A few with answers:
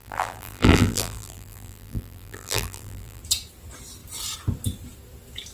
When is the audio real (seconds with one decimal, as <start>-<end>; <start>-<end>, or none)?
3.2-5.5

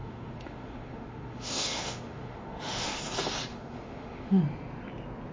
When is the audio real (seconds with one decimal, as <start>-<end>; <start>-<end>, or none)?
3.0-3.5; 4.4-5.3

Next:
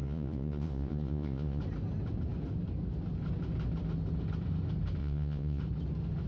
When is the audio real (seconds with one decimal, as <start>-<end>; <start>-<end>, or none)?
1.6-5.0; 5.6-6.3

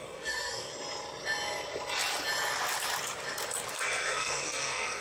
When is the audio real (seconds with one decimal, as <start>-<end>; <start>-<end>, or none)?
0.7-3.7

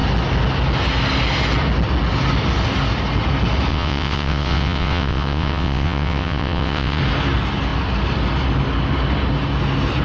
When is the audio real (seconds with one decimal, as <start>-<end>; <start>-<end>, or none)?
0.0-3.7; 7.0-10.0

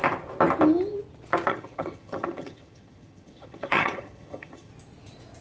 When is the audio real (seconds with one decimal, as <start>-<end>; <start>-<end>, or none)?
0.0-1.5; 4.7-5.4